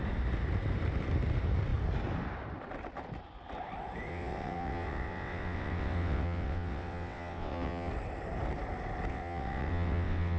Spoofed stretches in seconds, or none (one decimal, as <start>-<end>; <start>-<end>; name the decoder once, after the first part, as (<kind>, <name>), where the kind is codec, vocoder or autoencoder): 4.1-7.9 (vocoder, WaveNeXt); 9.1-10.4